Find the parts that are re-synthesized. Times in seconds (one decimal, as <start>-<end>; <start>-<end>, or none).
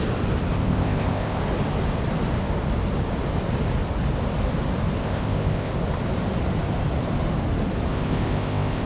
0.5-1.4; 5.0-5.7; 7.9-8.9